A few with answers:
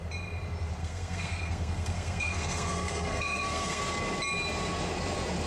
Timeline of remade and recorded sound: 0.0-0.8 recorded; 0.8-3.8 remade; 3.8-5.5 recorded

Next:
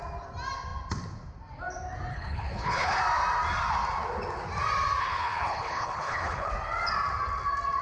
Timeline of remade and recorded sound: 0.0-2.1 recorded; 2.1-3.0 remade; 3.0-5.0 recorded; 5.0-6.5 remade; 6.5-7.8 recorded

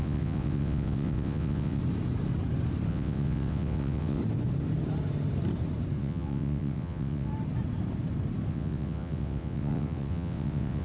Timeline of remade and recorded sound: 0.0-1.8 remade; 1.8-2.9 recorded; 2.9-4.2 remade; 4.2-6.0 recorded; 6.0-7.3 remade; 7.3-8.5 recorded; 8.5-10.8 remade

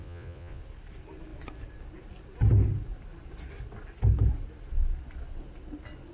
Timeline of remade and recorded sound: 0.0-0.6 remade; 0.6-6.1 recorded

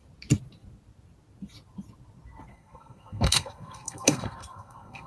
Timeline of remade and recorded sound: 0.0-2.5 recorded; 2.5-5.1 remade